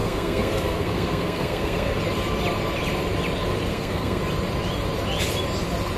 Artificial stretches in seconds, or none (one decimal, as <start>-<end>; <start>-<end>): 0.0-2.0; 3.7-4.2